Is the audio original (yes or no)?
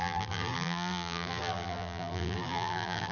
no